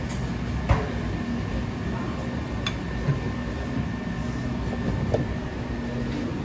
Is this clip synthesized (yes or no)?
no